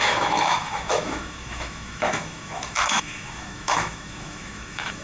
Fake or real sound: fake